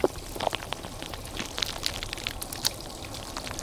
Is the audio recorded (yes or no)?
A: yes